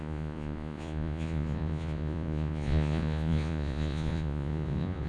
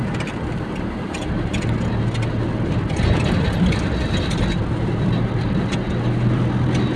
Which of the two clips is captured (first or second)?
second